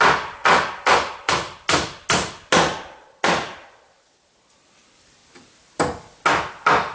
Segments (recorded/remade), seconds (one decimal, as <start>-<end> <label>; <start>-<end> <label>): 0.0-6.9 recorded